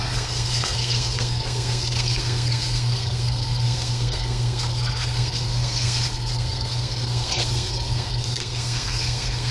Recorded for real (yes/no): no